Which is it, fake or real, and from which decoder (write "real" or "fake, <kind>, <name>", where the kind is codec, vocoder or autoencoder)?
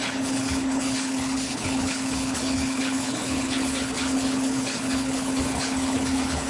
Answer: fake, codec, HILCodec